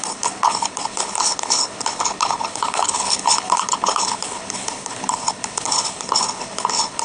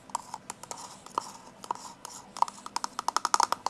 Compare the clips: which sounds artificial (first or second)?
first